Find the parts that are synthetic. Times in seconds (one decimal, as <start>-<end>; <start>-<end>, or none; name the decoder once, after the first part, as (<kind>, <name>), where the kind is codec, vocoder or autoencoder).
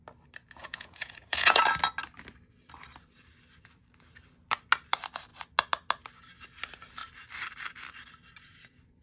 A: 0.6-1.6 (vocoder, Vocos)